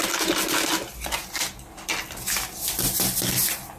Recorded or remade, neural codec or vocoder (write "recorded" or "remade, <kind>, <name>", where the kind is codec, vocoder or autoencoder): recorded